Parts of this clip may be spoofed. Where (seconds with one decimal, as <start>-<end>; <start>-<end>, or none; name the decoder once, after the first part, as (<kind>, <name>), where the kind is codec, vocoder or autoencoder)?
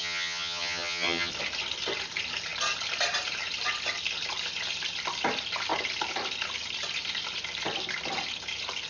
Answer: 0.0-1.3 (vocoder, HiFi-GAN)